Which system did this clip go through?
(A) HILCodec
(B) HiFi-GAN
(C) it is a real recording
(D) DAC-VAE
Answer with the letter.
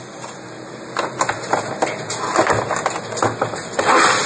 C